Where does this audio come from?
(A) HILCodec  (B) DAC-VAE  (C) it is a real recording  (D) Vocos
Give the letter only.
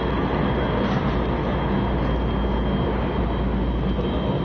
C